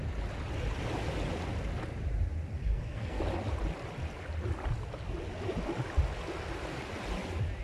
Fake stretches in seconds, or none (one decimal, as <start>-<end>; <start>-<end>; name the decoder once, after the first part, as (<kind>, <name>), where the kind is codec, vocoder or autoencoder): 2.6-3.2 (codec, SNAC)

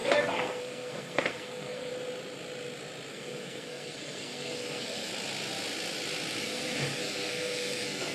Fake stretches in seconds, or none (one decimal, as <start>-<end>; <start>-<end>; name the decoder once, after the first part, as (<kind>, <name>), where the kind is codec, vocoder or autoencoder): 0.0-1.9 (codec, SNAC); 3.1-5.1; 6.4-8.1

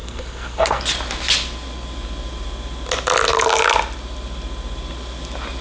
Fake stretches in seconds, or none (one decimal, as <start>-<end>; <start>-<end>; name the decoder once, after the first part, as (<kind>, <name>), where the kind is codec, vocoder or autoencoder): 0.0-0.8 (codec, SNAC)

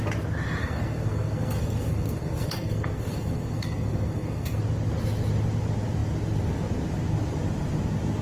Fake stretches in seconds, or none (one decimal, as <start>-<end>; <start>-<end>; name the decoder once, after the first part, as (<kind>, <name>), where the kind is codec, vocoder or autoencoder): 0.6-4.6 (codec, SNAC)

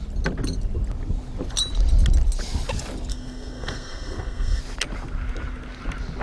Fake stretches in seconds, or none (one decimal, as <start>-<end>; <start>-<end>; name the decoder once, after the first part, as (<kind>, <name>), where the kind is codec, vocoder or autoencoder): 3.1-4.6 (codec, SNAC)

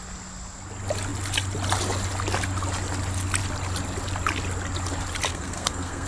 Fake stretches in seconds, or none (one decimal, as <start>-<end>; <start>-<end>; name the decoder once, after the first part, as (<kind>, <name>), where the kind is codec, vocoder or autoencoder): 5.3-6.1 (codec, SNAC)